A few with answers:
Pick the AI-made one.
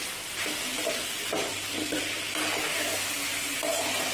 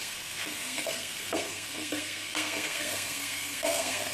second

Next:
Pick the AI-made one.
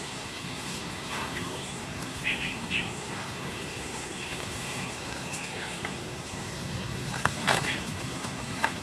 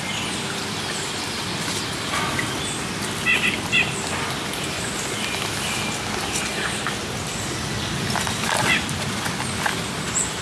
first